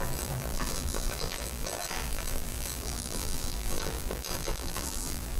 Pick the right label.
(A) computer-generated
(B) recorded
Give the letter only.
A